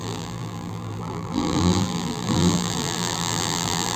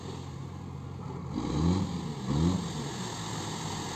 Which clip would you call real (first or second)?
second